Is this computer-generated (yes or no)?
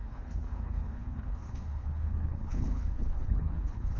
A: yes